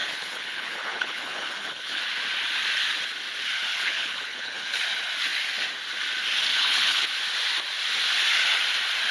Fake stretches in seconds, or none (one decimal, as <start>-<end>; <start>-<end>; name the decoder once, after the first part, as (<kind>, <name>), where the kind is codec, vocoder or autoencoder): 0.0-2.0 (codec, HILCodec); 3.7-4.8; 6.5-7.1